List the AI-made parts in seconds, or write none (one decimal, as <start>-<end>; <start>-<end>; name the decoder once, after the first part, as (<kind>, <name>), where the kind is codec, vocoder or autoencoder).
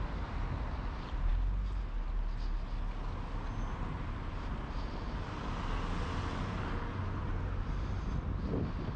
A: none